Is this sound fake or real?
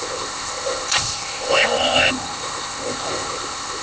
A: fake